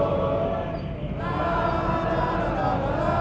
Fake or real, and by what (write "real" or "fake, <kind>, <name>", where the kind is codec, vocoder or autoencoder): real